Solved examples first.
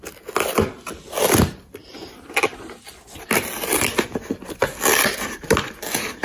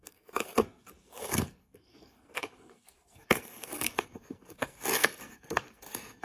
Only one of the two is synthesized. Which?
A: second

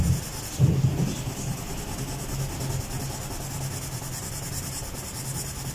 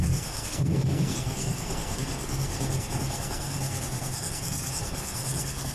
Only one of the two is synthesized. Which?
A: second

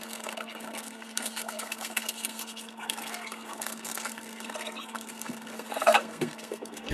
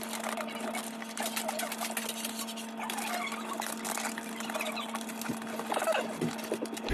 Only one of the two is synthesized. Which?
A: first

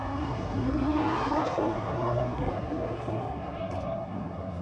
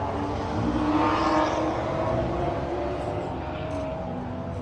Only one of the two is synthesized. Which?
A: first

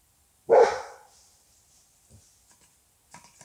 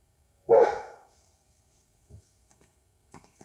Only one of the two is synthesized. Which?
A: second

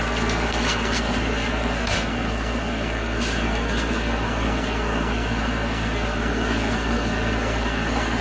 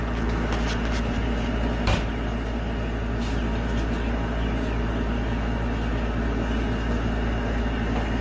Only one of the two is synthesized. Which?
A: first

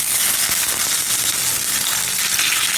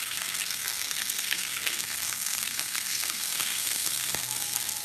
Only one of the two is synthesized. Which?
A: second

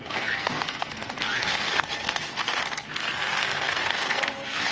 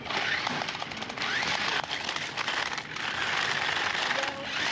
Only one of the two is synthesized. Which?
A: first